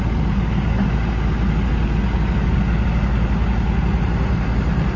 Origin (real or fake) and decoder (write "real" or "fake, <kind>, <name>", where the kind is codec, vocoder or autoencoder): real